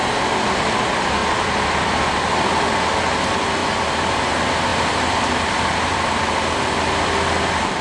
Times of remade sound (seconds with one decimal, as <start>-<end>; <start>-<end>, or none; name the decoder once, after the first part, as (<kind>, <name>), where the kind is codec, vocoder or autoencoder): 1.2-2.7 (vocoder, BigVGAN v2); 4.7-7.8